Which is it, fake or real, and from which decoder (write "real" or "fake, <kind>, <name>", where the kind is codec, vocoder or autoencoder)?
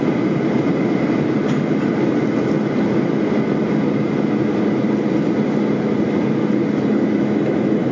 real